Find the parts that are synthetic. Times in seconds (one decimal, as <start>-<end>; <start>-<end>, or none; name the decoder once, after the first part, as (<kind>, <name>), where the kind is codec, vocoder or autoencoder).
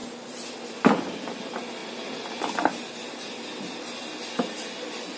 none